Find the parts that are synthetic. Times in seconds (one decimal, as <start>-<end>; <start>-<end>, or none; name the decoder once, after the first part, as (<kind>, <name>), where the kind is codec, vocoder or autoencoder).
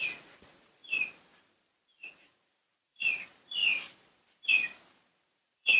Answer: 0.0-0.8 (vocoder, Vocos); 2.0-3.6; 5.0-5.8